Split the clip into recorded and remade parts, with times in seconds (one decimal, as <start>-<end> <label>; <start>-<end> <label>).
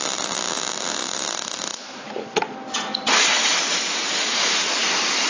0.0-5.3 recorded